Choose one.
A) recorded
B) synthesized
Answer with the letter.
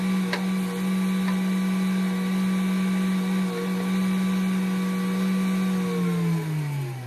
A